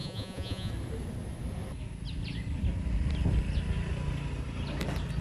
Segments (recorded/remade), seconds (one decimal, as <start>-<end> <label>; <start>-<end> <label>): 0.0-0.7 remade; 0.7-5.2 recorded